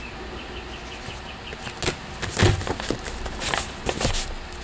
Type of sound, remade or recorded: recorded